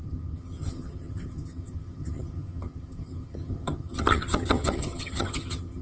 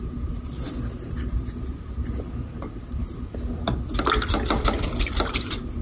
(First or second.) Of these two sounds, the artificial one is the first